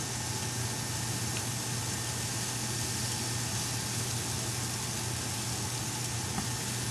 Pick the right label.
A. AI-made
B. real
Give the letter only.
B